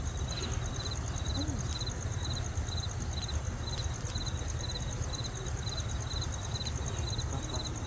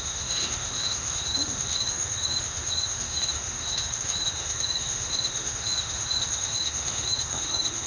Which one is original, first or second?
first